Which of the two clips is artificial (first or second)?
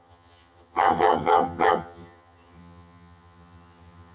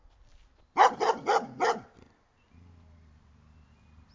first